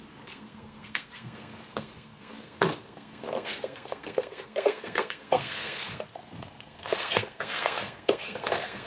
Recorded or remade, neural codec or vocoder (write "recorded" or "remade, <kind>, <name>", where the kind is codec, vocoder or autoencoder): remade, codec, SNAC